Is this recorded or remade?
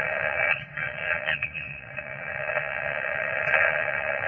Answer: remade